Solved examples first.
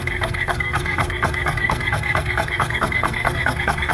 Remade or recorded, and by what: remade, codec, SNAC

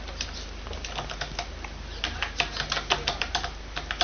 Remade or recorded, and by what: recorded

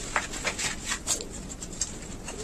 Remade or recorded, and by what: recorded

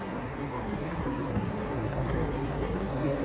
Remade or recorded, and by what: remade, codec, SNAC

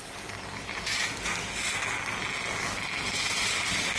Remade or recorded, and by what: recorded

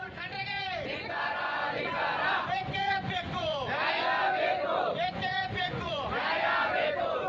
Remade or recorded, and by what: remade, vocoder, Vocos